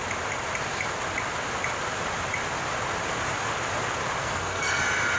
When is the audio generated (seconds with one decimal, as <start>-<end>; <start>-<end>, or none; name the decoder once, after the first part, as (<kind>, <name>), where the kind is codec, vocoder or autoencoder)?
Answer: 4.2-4.8 (codec, SNAC)

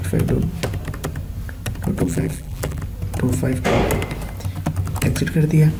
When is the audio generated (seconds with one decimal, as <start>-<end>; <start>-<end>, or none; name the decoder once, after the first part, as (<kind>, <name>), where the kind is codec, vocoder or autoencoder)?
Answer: 2.0-2.8 (vocoder, BigVGAN v2)

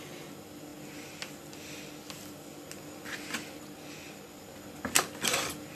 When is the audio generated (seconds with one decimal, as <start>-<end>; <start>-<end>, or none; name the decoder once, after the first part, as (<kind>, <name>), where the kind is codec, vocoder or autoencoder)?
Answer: none

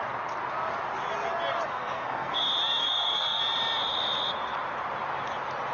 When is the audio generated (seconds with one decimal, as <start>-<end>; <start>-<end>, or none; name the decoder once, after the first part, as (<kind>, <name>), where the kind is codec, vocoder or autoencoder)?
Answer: 1.7-2.4 (codec, SNAC); 2.8-3.4

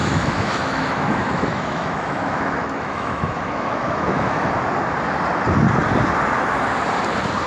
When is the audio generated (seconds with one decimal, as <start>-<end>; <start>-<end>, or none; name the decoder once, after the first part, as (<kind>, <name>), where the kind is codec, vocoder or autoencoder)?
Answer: 0.0-4.5 (autoencoder, DAC-VAE)

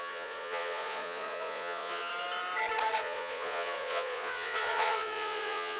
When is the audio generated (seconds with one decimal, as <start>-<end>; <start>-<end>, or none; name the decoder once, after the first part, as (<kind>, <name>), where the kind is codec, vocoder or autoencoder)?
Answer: 0.0-2.1 (vocoder, Vocos); 3.0-5.8

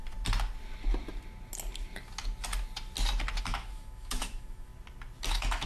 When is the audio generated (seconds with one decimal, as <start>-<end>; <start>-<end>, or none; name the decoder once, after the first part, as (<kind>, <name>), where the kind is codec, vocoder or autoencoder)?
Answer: 3.4-4.7 (autoencoder, DAC-VAE); 5.3-5.7